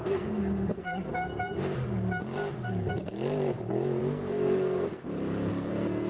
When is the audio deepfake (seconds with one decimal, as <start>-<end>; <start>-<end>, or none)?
0.0-1.1; 4.0-5.0; 5.5-6.1